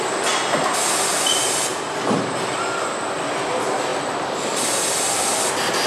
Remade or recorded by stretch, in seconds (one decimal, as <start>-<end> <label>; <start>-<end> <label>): 0.0-5.9 recorded